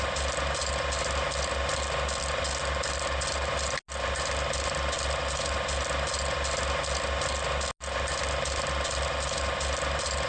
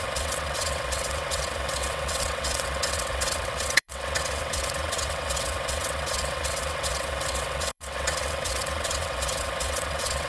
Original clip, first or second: first